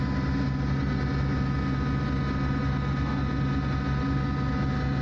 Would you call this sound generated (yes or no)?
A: no